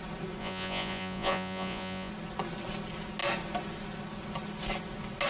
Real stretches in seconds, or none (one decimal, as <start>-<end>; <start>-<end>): 0.0-0.4; 2.1-5.3